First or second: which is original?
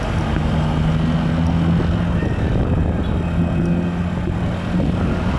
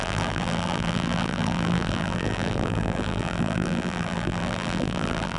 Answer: first